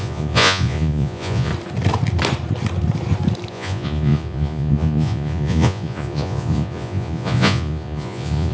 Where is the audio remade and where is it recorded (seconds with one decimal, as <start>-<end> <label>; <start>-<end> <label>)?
0.0-1.5 remade; 1.5-3.5 recorded; 3.5-8.5 remade